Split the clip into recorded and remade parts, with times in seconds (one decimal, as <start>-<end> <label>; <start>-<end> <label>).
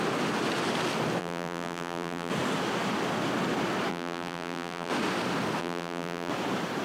0.0-1.2 recorded; 1.2-2.3 remade; 2.3-3.9 recorded; 3.9-4.9 remade; 4.9-5.6 recorded; 5.6-6.3 remade; 6.3-6.8 recorded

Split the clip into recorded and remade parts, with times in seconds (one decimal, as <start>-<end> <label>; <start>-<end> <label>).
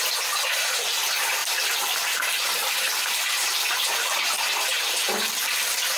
0.0-1.4 recorded; 1.4-3.2 remade; 3.2-6.0 recorded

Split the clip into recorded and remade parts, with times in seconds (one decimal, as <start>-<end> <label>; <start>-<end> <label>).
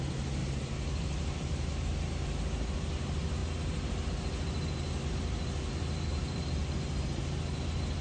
0.0-0.4 recorded; 0.4-1.9 remade; 1.9-6.1 recorded; 6.1-6.6 remade; 6.6-8.0 recorded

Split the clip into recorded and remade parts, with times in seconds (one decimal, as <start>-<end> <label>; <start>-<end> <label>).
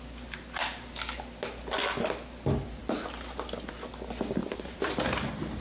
0.0-4.4 recorded; 4.4-4.9 remade; 4.9-5.6 recorded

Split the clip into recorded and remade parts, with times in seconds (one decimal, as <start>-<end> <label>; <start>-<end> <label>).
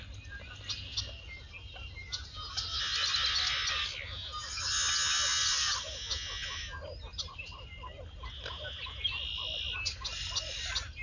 0.0-11.0 recorded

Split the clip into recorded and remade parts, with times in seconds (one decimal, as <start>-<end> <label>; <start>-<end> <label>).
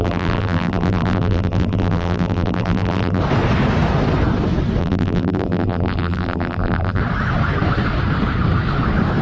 0.0-3.2 remade; 3.2-4.8 recorded; 4.8-7.0 remade; 7.0-9.2 recorded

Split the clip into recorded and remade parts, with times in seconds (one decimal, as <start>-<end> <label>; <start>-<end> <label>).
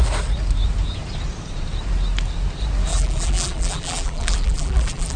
0.0-2.9 recorded; 2.9-5.2 remade